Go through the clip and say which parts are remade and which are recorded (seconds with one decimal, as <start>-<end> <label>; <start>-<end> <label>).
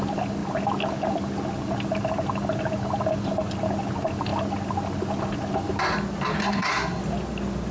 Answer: 0.0-6.4 recorded; 6.4-7.0 remade; 7.0-7.7 recorded